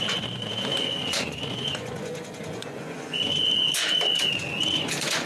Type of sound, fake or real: fake